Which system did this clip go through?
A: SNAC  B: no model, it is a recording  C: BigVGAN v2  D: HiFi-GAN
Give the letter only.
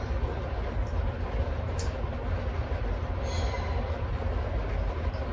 B